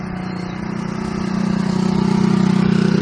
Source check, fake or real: real